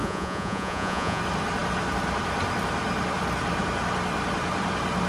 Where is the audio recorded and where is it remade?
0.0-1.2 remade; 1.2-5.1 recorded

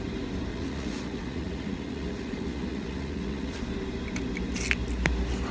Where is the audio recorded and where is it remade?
0.0-0.5 recorded; 0.5-3.6 remade; 3.6-5.5 recorded

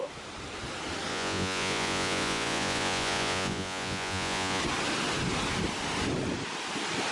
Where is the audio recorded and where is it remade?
0.0-1.1 recorded; 1.1-4.6 remade; 4.6-7.1 recorded

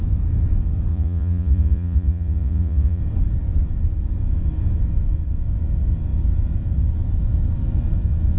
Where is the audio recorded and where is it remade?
0.0-0.9 recorded; 0.9-3.0 remade; 3.0-8.4 recorded